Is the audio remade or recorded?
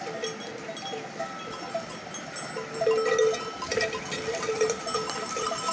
recorded